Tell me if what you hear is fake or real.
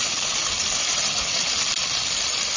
fake